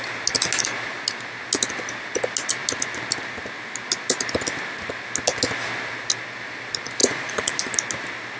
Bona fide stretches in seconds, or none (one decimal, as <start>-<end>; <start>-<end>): 0.0-7.0; 7.6-8.4